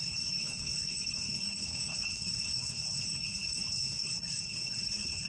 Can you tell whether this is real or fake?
fake